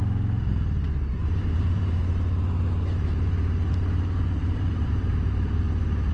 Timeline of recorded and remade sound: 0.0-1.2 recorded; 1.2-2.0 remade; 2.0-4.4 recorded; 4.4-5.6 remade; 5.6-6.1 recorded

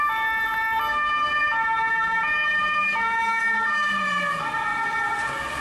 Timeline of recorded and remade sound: 0.0-2.8 recorded; 2.8-3.4 remade; 3.4-5.6 recorded